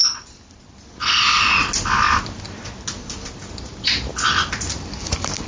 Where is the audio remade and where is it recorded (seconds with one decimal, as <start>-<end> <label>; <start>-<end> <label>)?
0.0-5.5 recorded